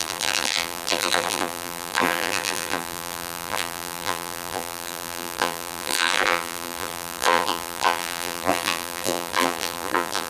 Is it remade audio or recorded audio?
remade